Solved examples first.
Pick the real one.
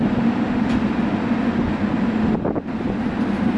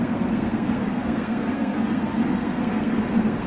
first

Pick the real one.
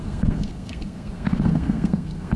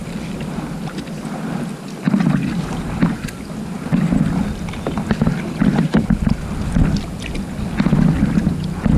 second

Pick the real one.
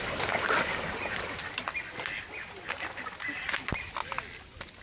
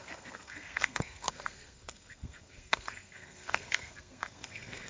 first